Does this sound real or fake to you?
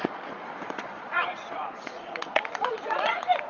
fake